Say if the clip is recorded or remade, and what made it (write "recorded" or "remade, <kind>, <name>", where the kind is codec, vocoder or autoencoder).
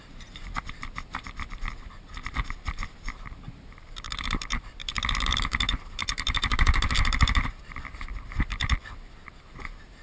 remade, vocoder, BigVGAN v2